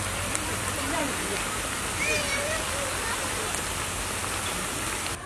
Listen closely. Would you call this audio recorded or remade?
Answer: recorded